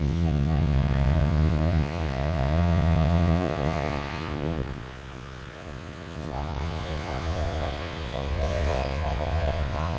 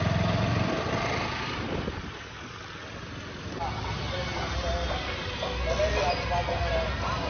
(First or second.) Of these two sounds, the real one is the second